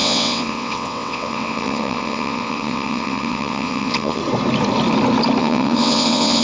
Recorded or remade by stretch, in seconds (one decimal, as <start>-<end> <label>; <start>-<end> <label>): 0.0-4.2 remade; 4.2-5.4 recorded; 5.4-6.4 remade